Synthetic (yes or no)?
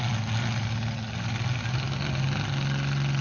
no